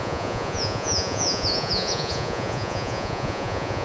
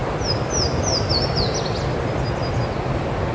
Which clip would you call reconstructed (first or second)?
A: first